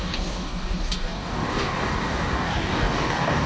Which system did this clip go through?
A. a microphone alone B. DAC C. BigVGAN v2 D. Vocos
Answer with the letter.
B